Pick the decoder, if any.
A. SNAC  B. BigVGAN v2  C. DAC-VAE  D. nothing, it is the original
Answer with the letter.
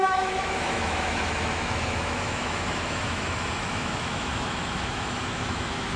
C